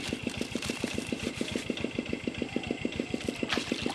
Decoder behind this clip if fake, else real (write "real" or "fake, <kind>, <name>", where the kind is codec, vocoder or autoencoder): real